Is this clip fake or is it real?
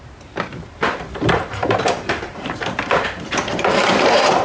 fake